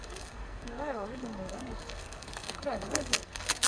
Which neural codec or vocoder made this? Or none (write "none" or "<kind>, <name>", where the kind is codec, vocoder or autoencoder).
codec, SNAC